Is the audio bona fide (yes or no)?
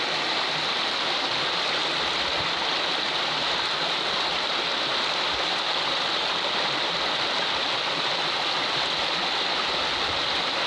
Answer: yes